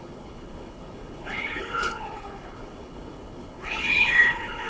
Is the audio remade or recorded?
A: remade